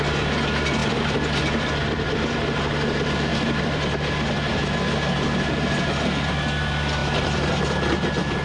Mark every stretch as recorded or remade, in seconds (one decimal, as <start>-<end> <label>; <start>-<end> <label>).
0.0-0.8 recorded; 0.8-2.6 remade; 2.6-3.3 recorded; 3.3-4.6 remade; 4.6-8.4 recorded